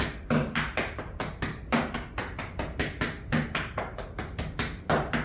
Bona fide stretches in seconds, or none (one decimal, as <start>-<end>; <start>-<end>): 0.0-5.2